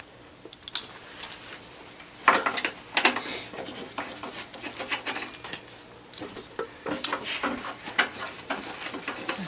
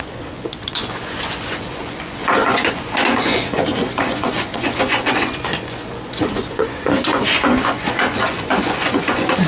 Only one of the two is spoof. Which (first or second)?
second